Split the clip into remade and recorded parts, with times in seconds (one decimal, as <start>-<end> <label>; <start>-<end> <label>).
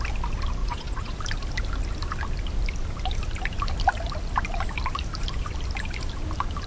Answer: 0.0-0.6 recorded; 0.6-1.2 remade; 1.2-6.7 recorded